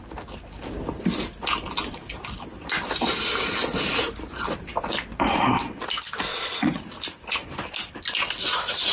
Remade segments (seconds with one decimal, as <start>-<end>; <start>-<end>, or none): 6.3-6.8